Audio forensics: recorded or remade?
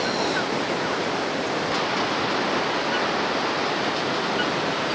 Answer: recorded